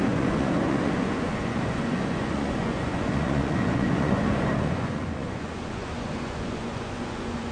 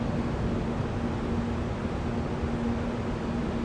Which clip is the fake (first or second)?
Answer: first